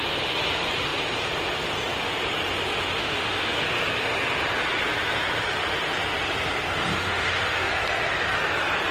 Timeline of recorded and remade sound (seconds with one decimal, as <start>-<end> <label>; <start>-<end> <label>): 0.0-2.7 recorded; 2.7-3.6 remade; 3.6-6.9 recorded; 6.9-7.7 remade; 7.7-8.9 recorded

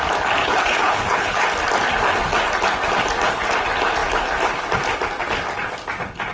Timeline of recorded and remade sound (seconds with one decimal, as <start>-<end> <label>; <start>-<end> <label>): 0.0-0.4 recorded; 0.4-1.5 remade; 1.5-6.3 recorded

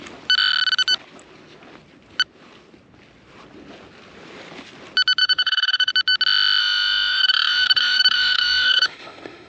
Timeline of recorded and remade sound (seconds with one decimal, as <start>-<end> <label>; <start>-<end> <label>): 0.0-5.2 recorded; 5.2-5.9 remade; 5.9-6.6 recorded; 6.6-9.5 remade